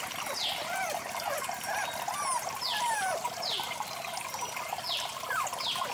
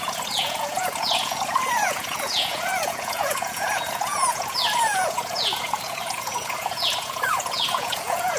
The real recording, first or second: first